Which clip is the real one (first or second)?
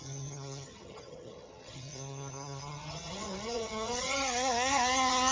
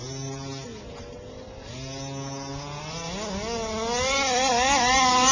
second